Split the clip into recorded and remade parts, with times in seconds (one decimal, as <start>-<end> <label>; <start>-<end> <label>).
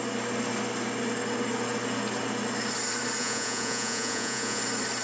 0.0-3.2 recorded; 3.2-4.6 remade; 4.6-5.0 recorded